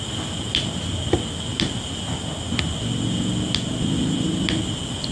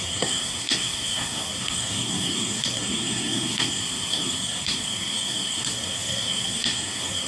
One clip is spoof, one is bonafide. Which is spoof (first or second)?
second